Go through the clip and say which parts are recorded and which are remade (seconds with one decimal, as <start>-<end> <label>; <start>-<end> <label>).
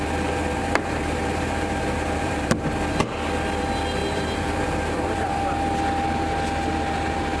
0.0-0.6 recorded; 0.6-2.7 remade; 2.7-4.0 recorded; 4.0-5.4 remade; 5.4-7.4 recorded